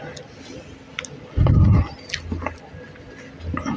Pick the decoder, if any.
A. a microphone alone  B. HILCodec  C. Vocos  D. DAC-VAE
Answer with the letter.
A